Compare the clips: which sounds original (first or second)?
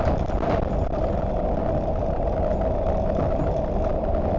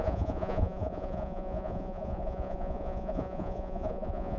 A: first